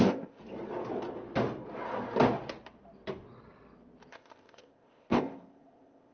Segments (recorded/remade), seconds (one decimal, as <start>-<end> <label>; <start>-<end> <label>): 0.0-0.4 remade; 0.4-4.1 recorded; 4.1-6.1 remade